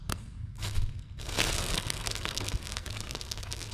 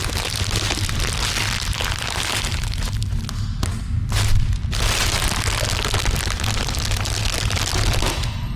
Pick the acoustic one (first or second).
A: second